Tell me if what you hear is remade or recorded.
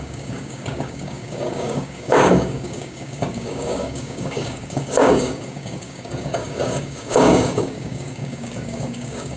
remade